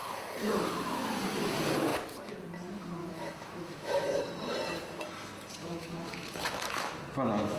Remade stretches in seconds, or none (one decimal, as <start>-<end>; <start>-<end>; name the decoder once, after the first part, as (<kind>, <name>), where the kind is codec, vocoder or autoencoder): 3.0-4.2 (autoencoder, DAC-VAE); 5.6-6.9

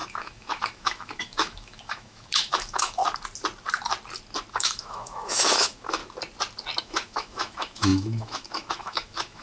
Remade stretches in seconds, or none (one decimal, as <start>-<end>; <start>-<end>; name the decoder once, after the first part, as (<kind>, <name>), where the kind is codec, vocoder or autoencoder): 0.0-3.0 (autoencoder, DAC-VAE); 4.5-6.0; 6.8-9.4

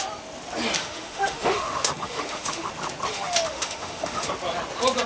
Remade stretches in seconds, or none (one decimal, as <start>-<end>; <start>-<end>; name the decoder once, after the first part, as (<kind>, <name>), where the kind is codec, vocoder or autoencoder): 0.8-2.7 (autoencoder, DAC-VAE); 3.1-4.3

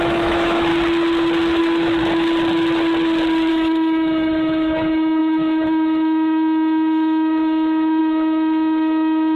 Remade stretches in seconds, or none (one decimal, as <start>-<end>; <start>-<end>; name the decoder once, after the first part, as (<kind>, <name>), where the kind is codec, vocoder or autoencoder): 0.0-0.7 (autoencoder, DAC-VAE); 1.6-2.0; 3.5-9.4

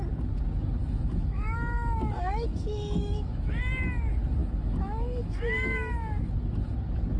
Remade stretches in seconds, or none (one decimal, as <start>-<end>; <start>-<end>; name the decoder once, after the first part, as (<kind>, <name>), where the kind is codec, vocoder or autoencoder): 0.8-3.5 (autoencoder, DAC-VAE); 4.4-6.3